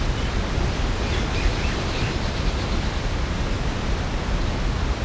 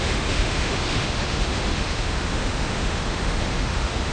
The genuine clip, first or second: first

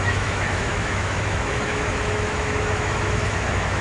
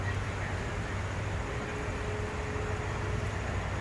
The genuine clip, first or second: second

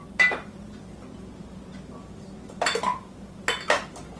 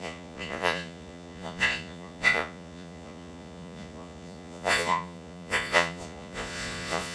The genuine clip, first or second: first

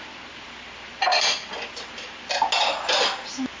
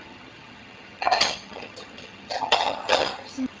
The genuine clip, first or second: first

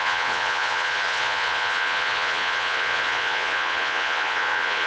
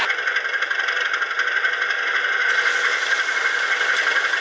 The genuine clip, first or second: second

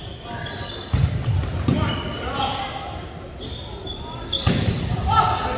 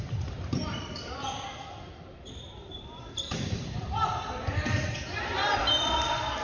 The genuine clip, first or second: first